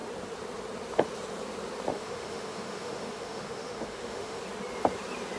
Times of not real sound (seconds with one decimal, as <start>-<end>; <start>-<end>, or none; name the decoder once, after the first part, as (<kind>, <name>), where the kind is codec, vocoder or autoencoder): 1.9-4.4 (autoencoder, DAC-VAE)